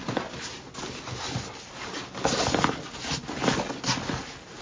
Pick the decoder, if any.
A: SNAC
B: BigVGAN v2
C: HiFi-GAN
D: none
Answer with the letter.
D